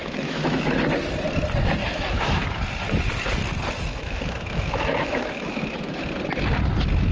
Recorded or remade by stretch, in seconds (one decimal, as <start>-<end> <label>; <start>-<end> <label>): 0.0-0.8 remade; 0.8-1.8 recorded; 1.8-2.4 remade; 2.4-3.9 recorded; 3.9-6.0 remade; 6.0-7.1 recorded